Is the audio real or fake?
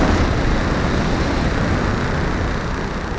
real